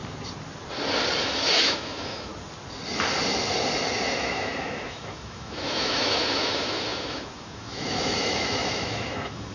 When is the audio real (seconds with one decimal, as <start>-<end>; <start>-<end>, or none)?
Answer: 0.0-1.2; 2.3-4.2